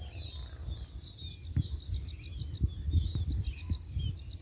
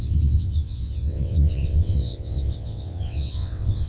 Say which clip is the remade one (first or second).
second